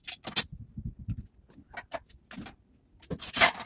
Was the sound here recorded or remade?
recorded